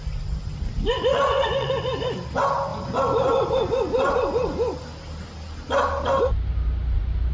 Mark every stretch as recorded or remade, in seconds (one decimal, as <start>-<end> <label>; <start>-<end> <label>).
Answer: 0.0-1.1 recorded; 1.1-1.7 remade; 1.7-7.3 recorded

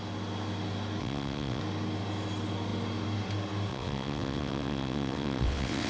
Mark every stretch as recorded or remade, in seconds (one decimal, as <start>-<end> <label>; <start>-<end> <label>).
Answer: 0.0-1.0 recorded; 1.0-1.6 remade; 1.6-3.7 recorded; 3.7-5.9 remade

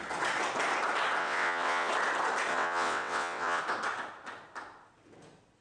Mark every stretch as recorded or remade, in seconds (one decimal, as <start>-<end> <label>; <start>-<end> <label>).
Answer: 0.0-1.2 recorded; 1.2-1.9 remade; 1.9-2.5 recorded; 2.5-3.6 remade; 3.6-5.6 recorded

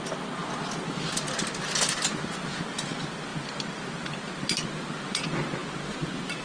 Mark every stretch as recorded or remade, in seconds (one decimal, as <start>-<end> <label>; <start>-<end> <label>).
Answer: 0.0-6.4 recorded